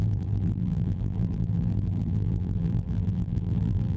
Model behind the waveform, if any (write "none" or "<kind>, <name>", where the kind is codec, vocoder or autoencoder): vocoder, BigVGAN v2